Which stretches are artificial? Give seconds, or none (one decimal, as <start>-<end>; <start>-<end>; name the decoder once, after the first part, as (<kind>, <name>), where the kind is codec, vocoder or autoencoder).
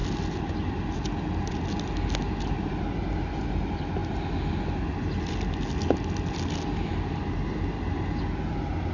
none